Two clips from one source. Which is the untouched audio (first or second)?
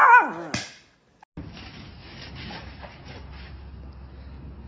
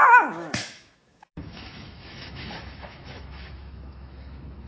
first